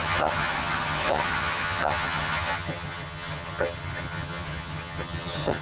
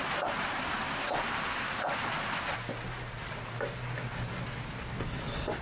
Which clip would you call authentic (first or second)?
second